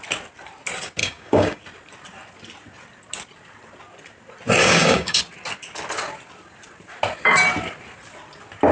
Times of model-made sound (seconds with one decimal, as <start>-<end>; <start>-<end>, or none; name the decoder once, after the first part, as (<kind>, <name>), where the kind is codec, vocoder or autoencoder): 1.0-1.6 (codec, DAC); 4.6-5.2

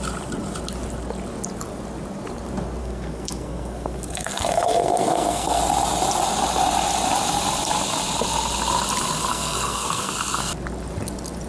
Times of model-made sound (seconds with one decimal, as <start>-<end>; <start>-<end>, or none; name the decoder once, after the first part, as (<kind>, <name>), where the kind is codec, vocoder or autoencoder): 2.8-5.6 (codec, SNAC); 9.3-10.5